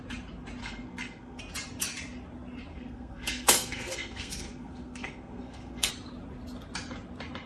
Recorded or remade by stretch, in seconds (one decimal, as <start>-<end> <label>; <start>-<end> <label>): 0.0-0.6 recorded; 0.6-1.4 remade; 1.4-2.7 recorded; 2.7-5.9 remade; 5.9-7.5 recorded